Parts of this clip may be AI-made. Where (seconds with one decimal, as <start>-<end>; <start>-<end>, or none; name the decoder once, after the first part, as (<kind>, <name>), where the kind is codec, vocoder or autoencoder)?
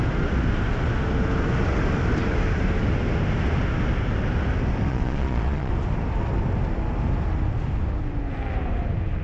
4.9-5.7 (vocoder, Vocos)